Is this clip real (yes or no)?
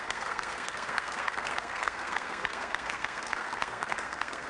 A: no